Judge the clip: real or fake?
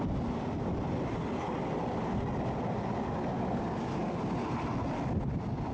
real